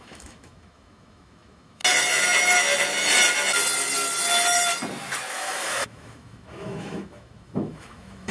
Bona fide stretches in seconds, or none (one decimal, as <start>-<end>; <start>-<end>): 1.8-5.3